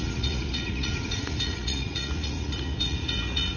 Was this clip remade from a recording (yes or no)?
yes